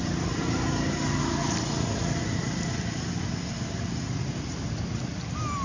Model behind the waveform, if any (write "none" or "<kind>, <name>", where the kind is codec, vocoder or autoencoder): none